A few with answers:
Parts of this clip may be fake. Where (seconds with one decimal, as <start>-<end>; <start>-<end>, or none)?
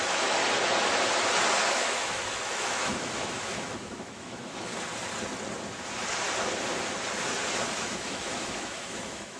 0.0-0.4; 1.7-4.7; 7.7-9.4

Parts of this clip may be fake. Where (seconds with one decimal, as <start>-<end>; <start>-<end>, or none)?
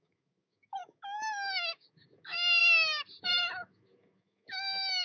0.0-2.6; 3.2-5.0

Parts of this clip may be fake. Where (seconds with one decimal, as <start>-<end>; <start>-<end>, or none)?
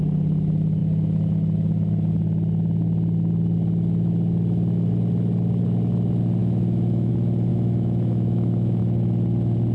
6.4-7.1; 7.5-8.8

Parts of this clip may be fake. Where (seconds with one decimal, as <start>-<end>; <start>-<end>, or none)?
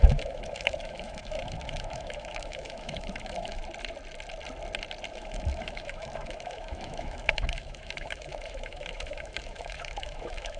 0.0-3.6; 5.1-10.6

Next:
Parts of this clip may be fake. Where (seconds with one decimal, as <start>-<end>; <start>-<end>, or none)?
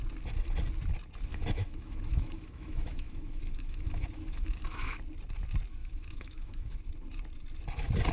1.3-5.0; 5.8-6.8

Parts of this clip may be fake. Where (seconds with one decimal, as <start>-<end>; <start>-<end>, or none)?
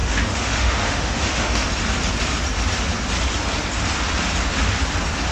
0.0-1.7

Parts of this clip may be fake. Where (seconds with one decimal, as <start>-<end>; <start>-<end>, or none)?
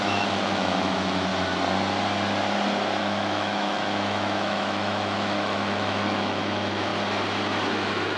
0.0-1.3; 3.0-6.9; 7.7-8.2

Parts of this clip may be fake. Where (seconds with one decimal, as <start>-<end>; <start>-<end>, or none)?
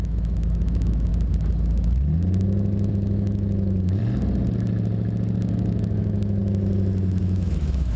0.0-1.1; 2.9-4.0; 5.5-6.4; 7.2-8.0